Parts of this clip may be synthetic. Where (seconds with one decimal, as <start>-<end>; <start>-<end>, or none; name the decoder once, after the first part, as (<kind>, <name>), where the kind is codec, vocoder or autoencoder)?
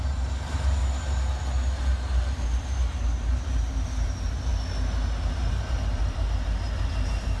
0.0-0.8 (vocoder, BigVGAN v2); 1.8-4.5; 5.3-7.4